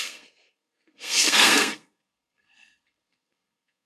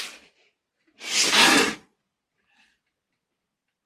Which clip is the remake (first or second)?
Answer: first